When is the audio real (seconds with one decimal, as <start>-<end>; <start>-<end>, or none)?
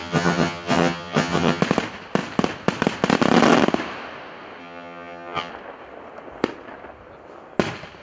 1.6-4.6; 5.5-8.0